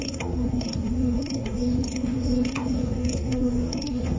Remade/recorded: remade